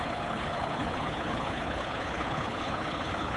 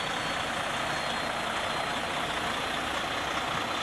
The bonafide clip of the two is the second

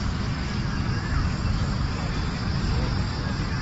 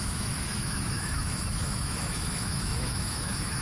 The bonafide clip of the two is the first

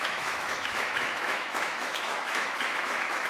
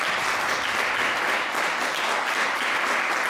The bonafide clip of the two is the second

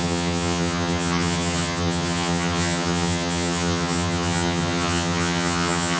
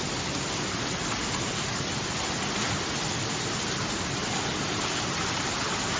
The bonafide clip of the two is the second